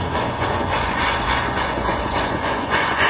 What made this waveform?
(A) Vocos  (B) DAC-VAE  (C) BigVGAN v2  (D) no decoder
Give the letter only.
A